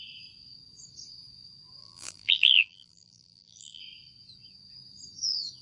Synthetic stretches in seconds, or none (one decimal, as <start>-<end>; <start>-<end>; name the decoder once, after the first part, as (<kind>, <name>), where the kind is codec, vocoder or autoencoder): 1.8-3.8 (vocoder, BigVGAN v2)